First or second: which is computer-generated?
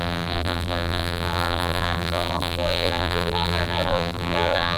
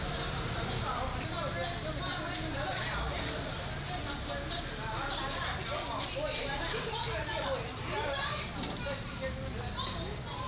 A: first